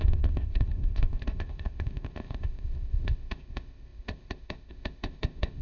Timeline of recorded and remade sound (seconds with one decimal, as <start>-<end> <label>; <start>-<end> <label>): 0.0-5.6 remade

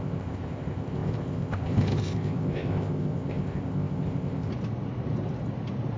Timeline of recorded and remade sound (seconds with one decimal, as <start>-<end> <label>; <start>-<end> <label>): 0.0-4.5 remade; 4.5-6.0 recorded

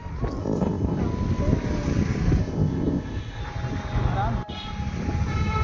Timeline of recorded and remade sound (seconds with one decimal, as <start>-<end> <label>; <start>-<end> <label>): 0.0-0.4 recorded; 0.4-1.0 remade; 1.0-2.4 recorded; 2.4-3.4 remade; 3.4-5.6 recorded

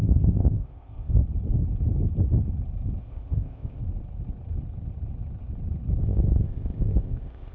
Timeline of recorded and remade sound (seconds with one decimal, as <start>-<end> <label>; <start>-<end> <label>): 0.0-1.2 remade; 1.2-3.0 recorded; 3.0-3.8 remade; 3.8-6.0 recorded; 6.0-7.5 remade